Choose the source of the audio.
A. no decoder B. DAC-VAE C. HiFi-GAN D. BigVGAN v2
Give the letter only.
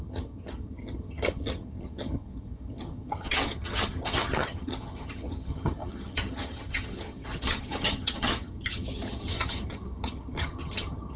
C